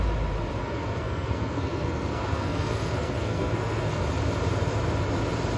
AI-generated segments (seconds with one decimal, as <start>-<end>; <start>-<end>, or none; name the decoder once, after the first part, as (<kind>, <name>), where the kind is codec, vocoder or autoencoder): 0.6-4.0 (codec, SNAC)